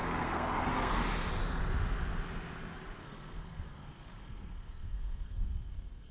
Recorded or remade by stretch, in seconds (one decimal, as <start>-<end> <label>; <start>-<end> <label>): 0.0-0.9 remade; 0.9-3.0 recorded; 3.0-6.1 remade